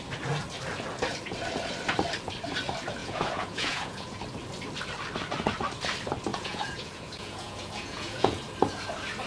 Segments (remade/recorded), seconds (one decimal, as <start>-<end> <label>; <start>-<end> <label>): 0.0-3.0 recorded; 3.0-4.2 remade; 4.2-6.3 recorded; 6.3-8.4 remade; 8.4-9.3 recorded